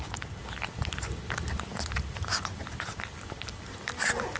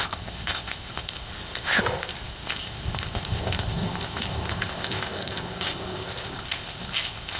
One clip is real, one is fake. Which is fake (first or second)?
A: second